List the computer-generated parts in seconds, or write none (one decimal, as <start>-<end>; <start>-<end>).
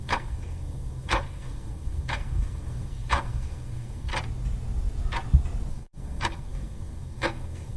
0.0-4.1; 5.7-7.8